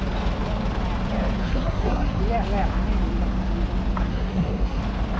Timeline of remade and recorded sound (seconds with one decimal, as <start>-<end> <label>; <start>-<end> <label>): 0.0-1.4 recorded; 1.4-2.2 remade; 2.2-4.1 recorded; 4.1-4.8 remade; 4.8-5.2 recorded